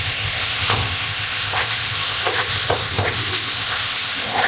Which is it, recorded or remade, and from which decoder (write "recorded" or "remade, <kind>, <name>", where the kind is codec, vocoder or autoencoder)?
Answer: remade, codec, ZipCodec